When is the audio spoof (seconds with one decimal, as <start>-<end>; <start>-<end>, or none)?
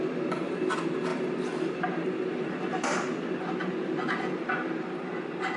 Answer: none